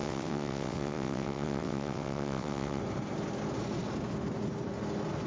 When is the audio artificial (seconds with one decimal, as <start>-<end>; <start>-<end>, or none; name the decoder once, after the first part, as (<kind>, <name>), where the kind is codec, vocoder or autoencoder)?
0.0-2.8 (vocoder, WaveNeXt)